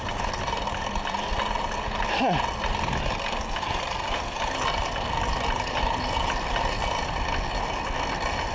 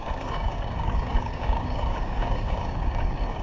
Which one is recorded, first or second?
first